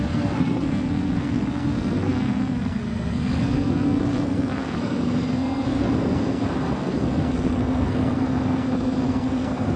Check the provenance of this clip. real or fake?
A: fake